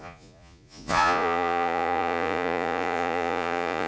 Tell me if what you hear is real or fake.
fake